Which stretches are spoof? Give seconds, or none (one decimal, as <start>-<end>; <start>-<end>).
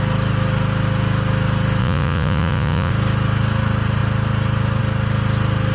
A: 1.8-2.9